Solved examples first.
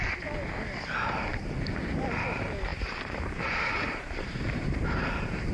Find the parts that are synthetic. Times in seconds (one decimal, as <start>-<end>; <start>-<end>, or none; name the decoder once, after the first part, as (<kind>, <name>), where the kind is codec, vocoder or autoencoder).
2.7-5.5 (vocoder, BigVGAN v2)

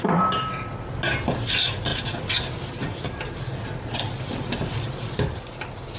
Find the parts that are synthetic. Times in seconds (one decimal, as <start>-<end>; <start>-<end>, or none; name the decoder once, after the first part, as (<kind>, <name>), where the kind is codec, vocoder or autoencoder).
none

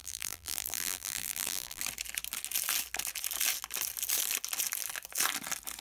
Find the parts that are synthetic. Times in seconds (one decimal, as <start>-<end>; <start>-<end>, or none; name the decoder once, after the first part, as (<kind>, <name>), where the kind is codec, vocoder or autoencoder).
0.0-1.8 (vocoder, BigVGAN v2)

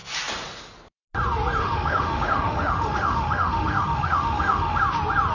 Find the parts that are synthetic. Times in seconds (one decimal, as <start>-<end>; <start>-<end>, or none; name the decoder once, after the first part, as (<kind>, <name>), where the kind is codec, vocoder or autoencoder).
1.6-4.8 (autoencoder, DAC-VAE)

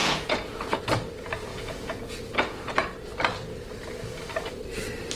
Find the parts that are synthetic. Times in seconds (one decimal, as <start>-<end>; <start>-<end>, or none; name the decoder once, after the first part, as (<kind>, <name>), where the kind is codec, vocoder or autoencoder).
0.0-0.8 (vocoder, Vocos); 1.5-2.6

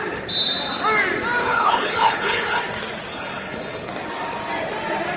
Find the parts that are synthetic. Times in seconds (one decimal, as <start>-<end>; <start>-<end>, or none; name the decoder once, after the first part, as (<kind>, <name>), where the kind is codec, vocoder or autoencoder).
1.4-2.6 (codec, HILCodec); 3.1-3.9